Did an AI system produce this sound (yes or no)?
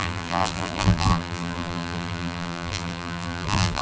yes